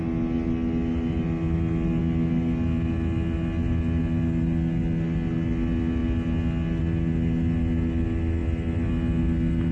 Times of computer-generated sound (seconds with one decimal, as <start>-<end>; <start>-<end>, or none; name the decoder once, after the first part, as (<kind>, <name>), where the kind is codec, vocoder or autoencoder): none